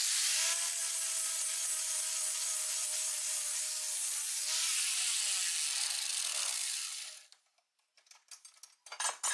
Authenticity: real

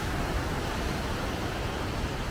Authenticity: real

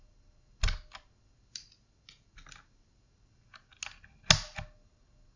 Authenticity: real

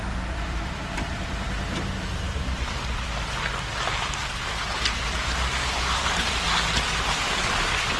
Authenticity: fake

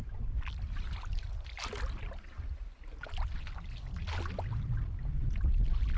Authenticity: real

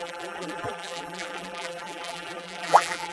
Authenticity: fake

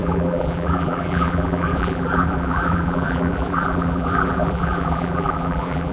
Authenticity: fake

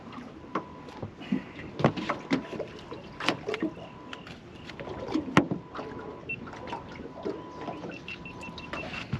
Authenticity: real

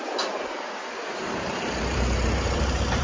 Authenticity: fake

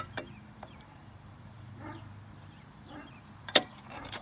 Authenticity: fake